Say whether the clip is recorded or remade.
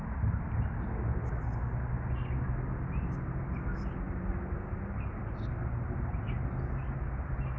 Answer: recorded